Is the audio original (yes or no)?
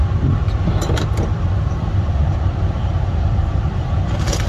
no